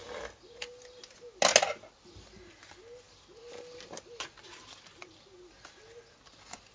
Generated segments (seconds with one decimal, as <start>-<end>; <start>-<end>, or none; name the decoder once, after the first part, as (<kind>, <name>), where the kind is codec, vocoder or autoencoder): none